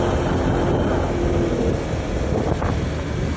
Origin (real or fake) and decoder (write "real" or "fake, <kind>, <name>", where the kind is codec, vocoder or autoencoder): real